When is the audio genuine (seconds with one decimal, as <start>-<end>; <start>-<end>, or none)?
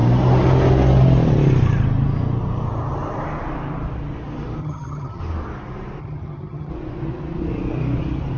0.0-4.6; 5.2-6.0; 6.7-8.4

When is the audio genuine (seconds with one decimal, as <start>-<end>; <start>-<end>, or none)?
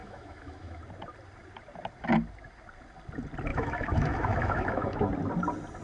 0.8-3.5; 5.1-5.8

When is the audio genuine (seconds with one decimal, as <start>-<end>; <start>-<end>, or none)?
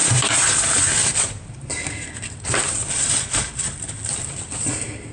none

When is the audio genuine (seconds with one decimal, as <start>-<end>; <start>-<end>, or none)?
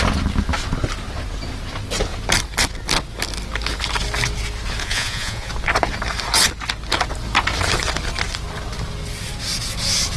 0.0-4.8; 5.5-10.2